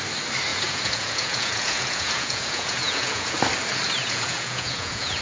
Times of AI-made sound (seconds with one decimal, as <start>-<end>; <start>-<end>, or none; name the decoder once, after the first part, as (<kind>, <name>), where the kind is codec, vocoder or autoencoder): 0.5-3.4 (vocoder, Vocos); 4.0-5.2